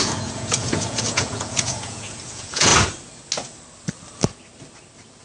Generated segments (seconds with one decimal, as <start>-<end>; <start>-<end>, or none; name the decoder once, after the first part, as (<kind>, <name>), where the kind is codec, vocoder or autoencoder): 0.0-2.7 (vocoder, Vocos)